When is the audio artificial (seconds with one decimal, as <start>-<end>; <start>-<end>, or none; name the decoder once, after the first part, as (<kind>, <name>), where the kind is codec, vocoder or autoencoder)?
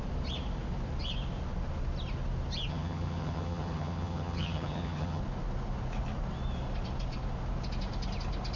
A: 2.7-5.2 (vocoder, HiFi-GAN)